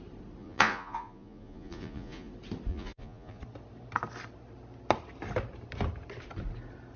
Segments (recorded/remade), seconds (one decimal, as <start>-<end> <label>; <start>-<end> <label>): 0.0-0.4 recorded; 0.4-2.3 remade; 2.3-2.7 recorded; 2.7-3.4 remade; 3.4-7.0 recorded